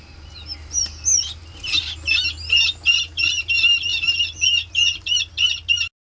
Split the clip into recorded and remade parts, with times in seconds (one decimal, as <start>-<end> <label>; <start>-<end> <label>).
0.0-6.0 recorded